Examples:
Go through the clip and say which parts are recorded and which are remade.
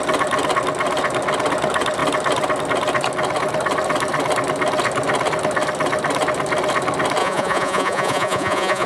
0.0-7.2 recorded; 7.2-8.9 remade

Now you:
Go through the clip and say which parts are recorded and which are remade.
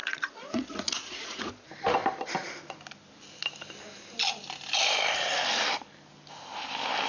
0.0-1.5 remade; 1.5-7.1 recorded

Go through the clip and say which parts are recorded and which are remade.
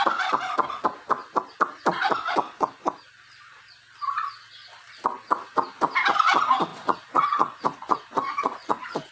0.0-6.7 recorded; 6.7-9.1 remade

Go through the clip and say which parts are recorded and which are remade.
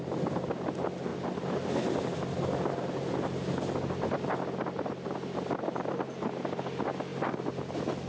0.0-8.1 recorded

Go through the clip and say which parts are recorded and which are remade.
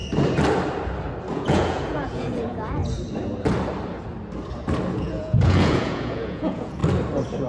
0.0-1.3 recorded; 1.3-2.8 remade; 2.8-4.9 recorded; 4.9-6.8 remade; 6.8-7.5 recorded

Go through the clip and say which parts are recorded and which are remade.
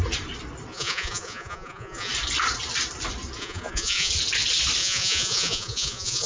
0.0-0.7 recorded; 0.7-2.1 remade; 2.1-3.4 recorded; 3.4-4.1 remade; 4.1-4.8 recorded; 4.8-6.3 remade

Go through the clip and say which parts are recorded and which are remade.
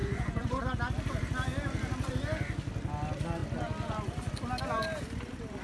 0.0-0.6 remade; 0.6-5.6 recorded